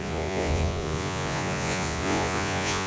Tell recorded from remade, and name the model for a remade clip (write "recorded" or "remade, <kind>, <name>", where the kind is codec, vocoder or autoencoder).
remade, vocoder, Vocos